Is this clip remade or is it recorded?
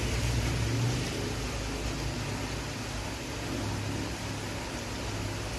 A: recorded